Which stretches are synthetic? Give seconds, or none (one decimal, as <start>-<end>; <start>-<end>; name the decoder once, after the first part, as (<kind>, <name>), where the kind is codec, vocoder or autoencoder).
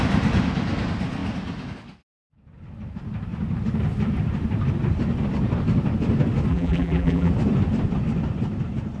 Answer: 6.5-7.3 (vocoder, BigVGAN v2)